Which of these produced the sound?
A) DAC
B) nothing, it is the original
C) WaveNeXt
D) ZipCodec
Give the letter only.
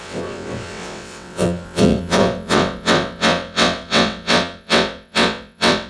C